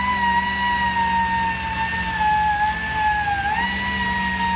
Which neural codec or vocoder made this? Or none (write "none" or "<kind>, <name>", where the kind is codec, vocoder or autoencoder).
none